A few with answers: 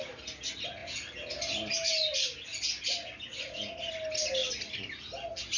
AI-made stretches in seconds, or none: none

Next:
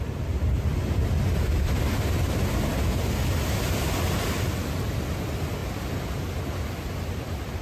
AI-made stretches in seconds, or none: none

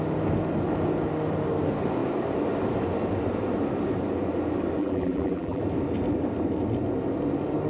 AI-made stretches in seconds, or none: 4.8-5.6 (vocoder, BigVGAN v2)

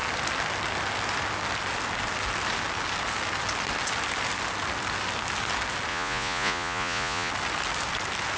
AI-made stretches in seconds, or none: 5.9-7.3 (vocoder, Vocos)

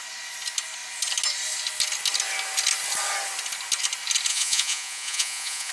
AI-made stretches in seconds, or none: 4.3-5.7 (vocoder, Vocos)